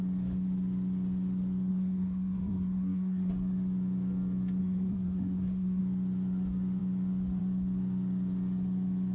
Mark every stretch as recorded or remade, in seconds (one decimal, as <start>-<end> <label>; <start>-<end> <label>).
0.0-1.7 recorded; 1.7-3.3 remade; 3.3-4.6 recorded; 4.6-5.8 remade; 5.8-9.1 recorded